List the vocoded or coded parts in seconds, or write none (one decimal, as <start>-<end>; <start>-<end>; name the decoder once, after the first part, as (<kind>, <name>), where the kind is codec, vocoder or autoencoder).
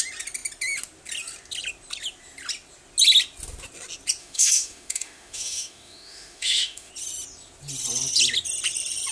4.2-6.9 (autoencoder, DAC-VAE)